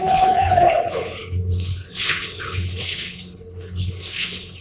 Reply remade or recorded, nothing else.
remade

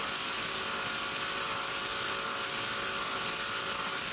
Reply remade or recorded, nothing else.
recorded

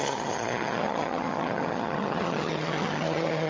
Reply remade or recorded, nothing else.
remade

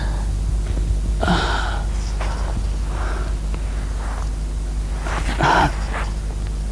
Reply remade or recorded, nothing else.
recorded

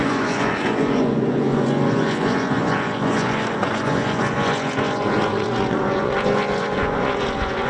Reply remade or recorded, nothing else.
remade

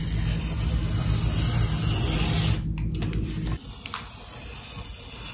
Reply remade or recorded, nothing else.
recorded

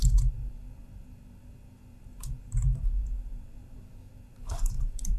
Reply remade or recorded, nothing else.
remade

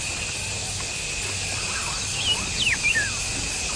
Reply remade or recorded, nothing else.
recorded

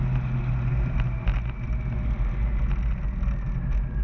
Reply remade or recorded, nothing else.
recorded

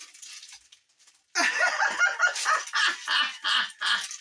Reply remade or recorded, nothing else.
recorded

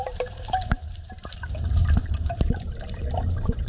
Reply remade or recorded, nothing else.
remade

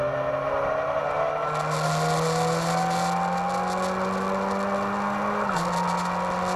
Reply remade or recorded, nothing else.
recorded